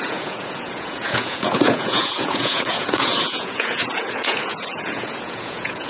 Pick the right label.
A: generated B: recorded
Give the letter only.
A